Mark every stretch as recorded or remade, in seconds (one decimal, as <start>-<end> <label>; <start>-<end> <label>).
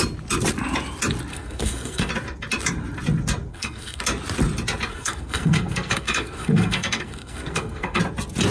0.0-1.3 recorded; 1.3-2.1 remade; 2.1-3.5 recorded; 3.5-4.0 remade; 4.0-4.9 recorded; 4.9-8.0 remade; 8.0-8.5 recorded